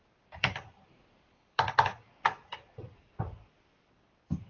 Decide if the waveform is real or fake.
fake